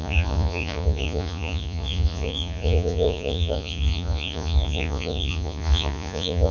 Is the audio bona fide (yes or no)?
no